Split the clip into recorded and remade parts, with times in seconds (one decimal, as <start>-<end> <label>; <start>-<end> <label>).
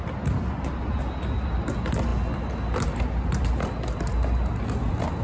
0.0-5.2 recorded